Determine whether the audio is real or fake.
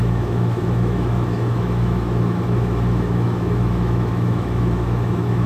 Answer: fake